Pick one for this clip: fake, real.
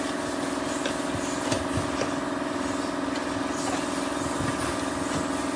real